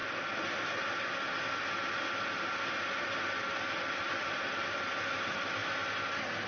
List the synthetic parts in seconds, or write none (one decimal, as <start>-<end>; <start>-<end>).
3.9-5.6